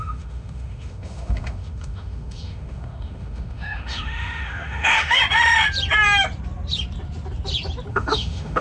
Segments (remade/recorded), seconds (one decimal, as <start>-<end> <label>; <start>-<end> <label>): 0.0-5.2 remade; 5.2-7.9 recorded; 7.9-8.6 remade